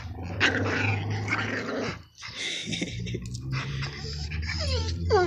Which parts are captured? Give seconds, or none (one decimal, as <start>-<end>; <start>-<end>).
0.0-5.3